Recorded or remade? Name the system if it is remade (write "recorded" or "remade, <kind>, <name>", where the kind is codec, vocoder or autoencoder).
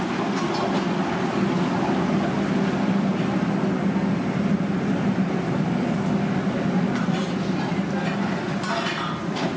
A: recorded